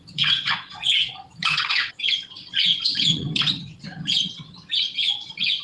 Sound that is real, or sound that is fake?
fake